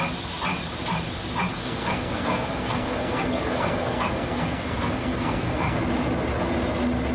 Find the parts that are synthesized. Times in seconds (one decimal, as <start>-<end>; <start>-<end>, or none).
1.5-5.8